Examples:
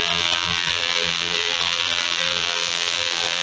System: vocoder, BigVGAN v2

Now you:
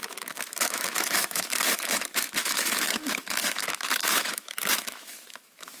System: autoencoder, DAC-VAE